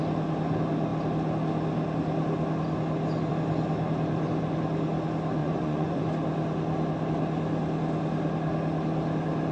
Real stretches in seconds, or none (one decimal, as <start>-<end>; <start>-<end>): 0.0-5.4; 6.0-9.5